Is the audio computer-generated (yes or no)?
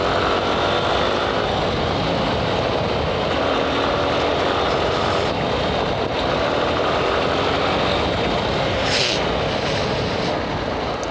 no